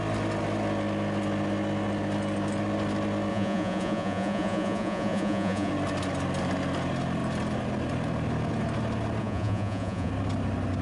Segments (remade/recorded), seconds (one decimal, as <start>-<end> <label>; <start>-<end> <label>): 0.0-3.3 recorded; 3.3-5.7 remade; 5.7-9.2 recorded; 9.2-10.1 remade; 10.1-10.8 recorded

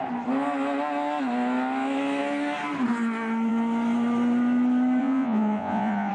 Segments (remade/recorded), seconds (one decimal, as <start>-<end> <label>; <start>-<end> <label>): 0.0-5.0 recorded; 5.0-6.1 remade

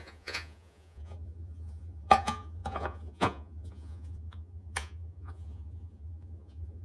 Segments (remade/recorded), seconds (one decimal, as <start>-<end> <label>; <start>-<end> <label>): 0.0-6.8 remade

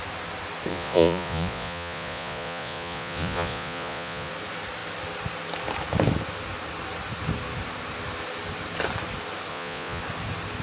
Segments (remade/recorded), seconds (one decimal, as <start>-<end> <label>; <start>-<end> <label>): 0.0-0.7 recorded; 0.7-4.3 remade; 4.3-9.5 recorded; 9.5-10.0 remade; 10.0-10.6 recorded

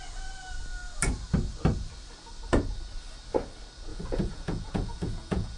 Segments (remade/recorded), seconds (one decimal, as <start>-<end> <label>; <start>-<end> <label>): 0.0-3.9 recorded; 3.9-5.6 remade

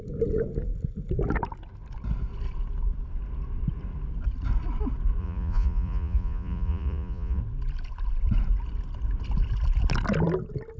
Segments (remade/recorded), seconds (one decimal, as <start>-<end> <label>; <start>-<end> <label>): 0.0-5.2 recorded; 5.2-7.4 remade; 7.4-10.8 recorded

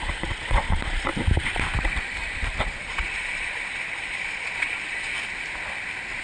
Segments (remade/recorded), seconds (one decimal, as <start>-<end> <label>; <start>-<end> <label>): 0.0-1.1 remade; 1.1-2.6 recorded; 2.6-5.1 remade; 5.1-6.2 recorded